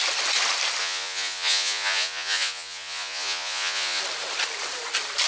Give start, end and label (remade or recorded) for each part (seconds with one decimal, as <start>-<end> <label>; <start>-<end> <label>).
0.0-0.8 recorded; 0.8-4.0 remade; 4.0-5.3 recorded